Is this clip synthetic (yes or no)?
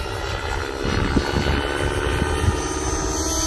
no